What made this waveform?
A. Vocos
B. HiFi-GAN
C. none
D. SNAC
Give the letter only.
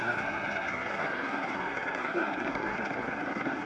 D